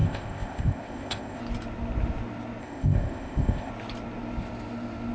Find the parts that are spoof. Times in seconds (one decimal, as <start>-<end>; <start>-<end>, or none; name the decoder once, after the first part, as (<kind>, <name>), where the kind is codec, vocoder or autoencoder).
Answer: 0.0-1.4 (codec, ZipCodec); 2.6-3.7